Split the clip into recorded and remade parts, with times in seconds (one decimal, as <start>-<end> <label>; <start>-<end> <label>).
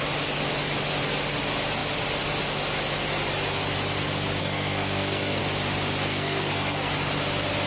0.0-4.4 recorded; 4.4-5.4 remade; 5.4-6.1 recorded; 6.1-6.9 remade; 6.9-7.7 recorded